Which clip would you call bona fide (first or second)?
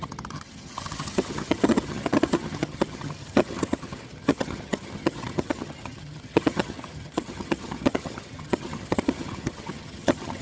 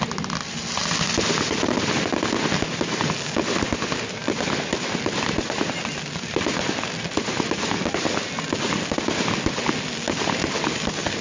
second